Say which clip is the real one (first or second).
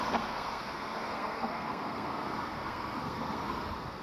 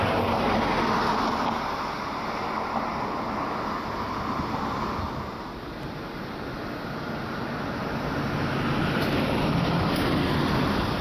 second